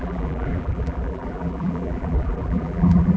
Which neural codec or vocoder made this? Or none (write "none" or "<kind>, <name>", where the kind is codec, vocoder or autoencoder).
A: vocoder, BigVGAN v2